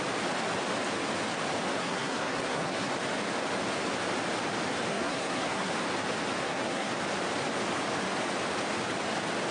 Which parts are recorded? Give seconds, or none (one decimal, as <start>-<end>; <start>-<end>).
0.0-1.8; 2.9-4.9; 5.7-6.4; 6.9-9.5